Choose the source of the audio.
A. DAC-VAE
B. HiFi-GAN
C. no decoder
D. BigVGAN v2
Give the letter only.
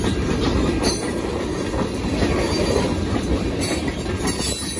C